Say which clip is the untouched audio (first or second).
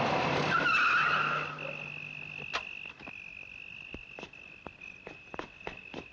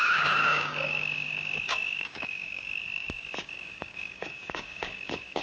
first